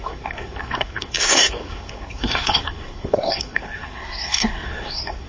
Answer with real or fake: fake